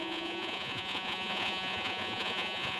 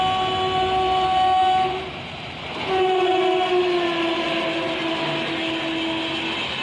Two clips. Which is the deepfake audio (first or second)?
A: first